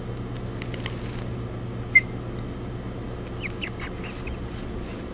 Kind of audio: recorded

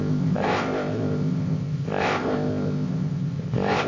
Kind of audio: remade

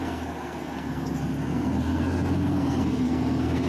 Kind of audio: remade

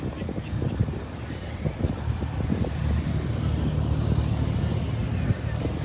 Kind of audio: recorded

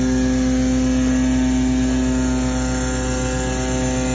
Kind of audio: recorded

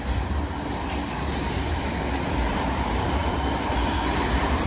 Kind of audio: remade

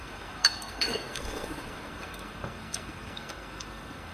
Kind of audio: remade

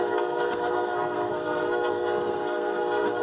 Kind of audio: remade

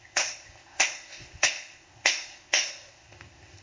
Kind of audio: remade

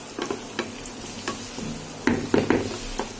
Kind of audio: recorded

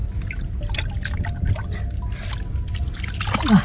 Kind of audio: recorded